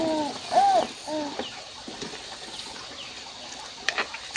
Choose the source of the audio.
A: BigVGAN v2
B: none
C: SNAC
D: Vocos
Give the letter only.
B